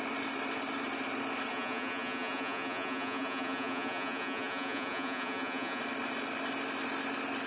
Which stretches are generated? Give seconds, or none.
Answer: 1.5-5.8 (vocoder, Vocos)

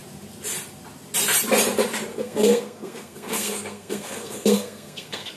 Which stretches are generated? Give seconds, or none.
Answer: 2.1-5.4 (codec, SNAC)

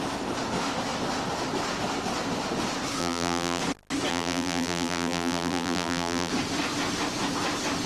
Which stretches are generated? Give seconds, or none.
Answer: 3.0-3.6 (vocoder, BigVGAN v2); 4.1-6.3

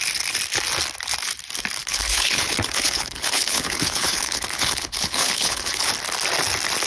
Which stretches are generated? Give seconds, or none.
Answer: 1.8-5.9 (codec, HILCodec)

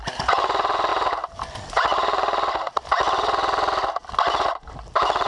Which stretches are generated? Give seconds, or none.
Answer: none